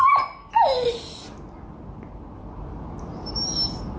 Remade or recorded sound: recorded